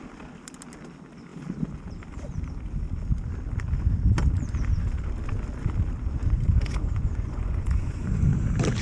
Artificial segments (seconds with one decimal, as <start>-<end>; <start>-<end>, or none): 6.2-8.2